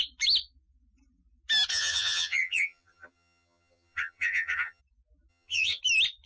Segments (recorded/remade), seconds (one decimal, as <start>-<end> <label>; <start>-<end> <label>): 0.0-1.7 recorded; 1.7-4.8 remade; 4.8-5.3 recorded; 5.3-5.8 remade; 5.8-6.3 recorded